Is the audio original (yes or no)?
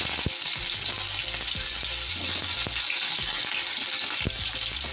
yes